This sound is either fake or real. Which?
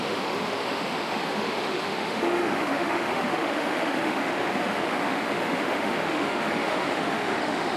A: fake